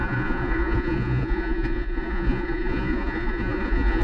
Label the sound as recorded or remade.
remade